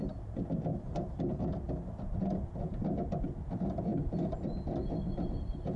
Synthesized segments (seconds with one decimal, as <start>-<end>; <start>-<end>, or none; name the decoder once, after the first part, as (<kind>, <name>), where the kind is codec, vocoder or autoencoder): 0.7-1.4 (vocoder, BigVGAN v2)